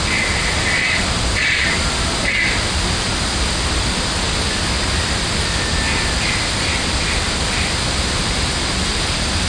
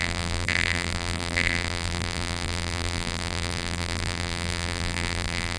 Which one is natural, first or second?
first